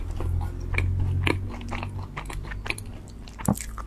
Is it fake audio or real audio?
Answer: real